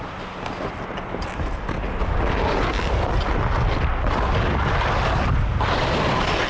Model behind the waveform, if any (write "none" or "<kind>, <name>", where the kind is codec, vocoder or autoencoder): none